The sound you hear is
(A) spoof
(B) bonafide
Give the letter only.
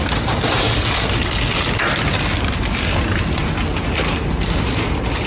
B